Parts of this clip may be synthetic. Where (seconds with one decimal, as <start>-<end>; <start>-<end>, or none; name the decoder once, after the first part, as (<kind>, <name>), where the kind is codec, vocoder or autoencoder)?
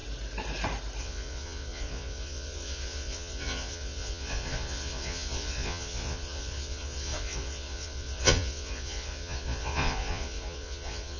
1.0-11.2 (vocoder, Vocos)